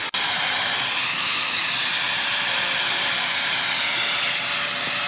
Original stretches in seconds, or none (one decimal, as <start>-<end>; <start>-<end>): 0.0-1.1; 1.6-5.1